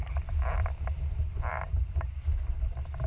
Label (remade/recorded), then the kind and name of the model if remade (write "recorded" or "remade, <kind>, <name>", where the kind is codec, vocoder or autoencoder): remade, vocoder, BigVGAN v2